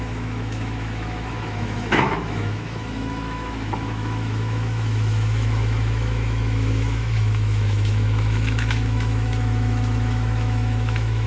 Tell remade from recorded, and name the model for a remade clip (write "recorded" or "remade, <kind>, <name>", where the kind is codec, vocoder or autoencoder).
remade, autoencoder, DAC-VAE